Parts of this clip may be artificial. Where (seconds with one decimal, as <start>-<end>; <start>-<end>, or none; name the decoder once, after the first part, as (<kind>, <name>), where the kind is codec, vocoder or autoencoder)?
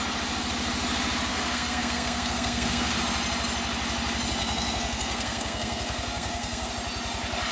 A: 1.3-3.0 (codec, SNAC); 4.4-6.7